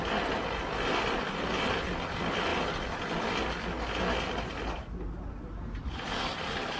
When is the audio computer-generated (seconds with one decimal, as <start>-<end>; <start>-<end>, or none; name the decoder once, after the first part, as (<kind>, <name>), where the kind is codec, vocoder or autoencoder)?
none